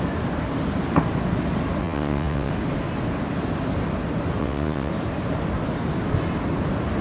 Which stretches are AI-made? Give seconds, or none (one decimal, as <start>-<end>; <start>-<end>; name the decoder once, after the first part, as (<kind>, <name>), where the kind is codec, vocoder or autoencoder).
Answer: 1.8-2.5 (vocoder, WaveNeXt); 4.4-4.9